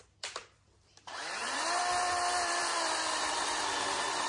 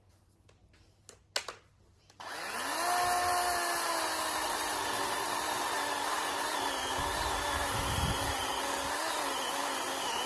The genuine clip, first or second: second